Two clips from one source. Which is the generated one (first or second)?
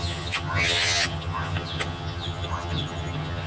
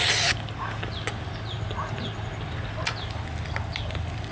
first